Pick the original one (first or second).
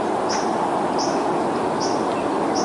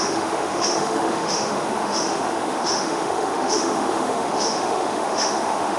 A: first